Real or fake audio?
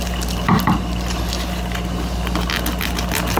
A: real